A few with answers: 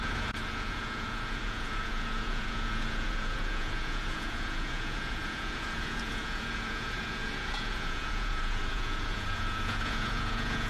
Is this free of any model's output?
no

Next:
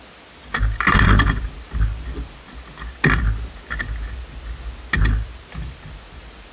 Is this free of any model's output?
yes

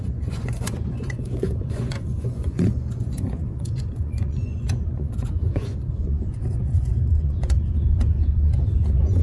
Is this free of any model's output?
no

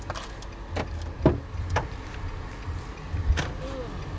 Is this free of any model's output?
yes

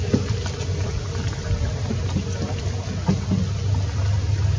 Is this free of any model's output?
yes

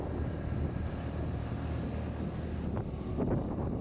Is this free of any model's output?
yes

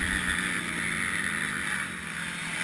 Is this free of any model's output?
yes